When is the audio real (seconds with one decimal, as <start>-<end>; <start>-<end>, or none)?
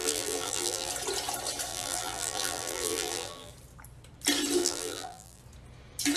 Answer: 0.9-1.7; 3.5-4.6; 5.4-6.2